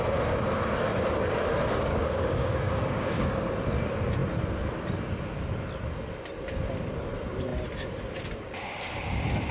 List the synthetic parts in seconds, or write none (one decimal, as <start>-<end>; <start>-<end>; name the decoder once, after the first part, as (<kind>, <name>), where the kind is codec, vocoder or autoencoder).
1.9-3.5 (codec, DAC)